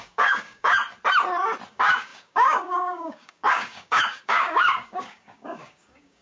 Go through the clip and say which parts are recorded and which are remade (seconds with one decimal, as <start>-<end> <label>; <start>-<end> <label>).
0.0-0.8 remade; 0.8-1.7 recorded; 1.7-6.2 remade